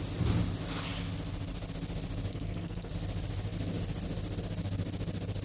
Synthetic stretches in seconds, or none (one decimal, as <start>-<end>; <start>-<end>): 2.3-2.9